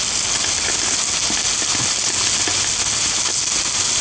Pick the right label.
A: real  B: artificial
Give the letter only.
A